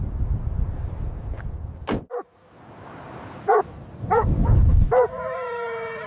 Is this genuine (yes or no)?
yes